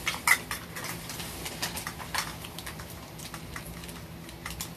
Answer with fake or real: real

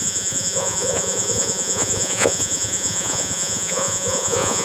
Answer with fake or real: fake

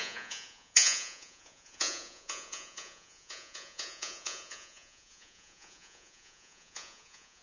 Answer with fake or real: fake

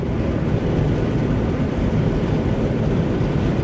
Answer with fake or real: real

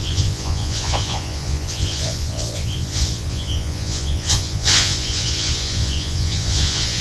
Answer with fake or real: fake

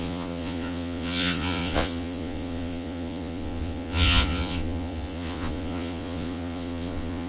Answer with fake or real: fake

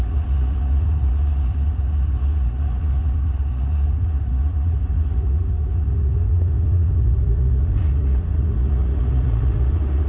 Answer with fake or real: fake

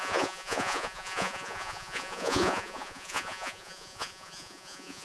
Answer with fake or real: fake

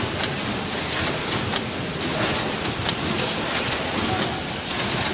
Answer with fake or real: real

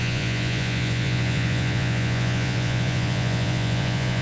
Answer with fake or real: fake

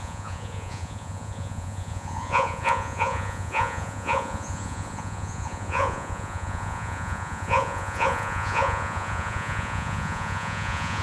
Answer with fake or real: fake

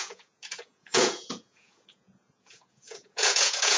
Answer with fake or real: fake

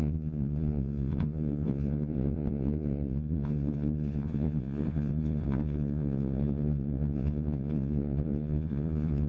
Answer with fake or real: fake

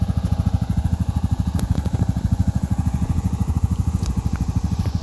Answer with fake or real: fake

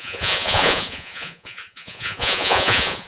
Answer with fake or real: fake